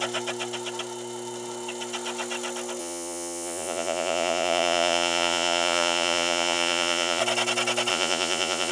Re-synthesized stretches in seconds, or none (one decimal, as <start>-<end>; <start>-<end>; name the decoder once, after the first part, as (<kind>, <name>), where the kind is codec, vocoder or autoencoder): 2.8-7.2 (vocoder, Vocos); 7.9-8.7